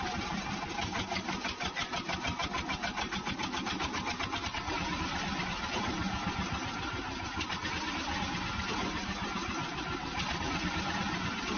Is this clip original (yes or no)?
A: yes